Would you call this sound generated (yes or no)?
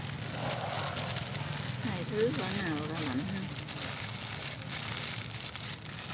no